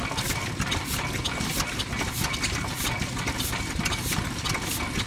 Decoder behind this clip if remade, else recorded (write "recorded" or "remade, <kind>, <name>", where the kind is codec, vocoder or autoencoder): recorded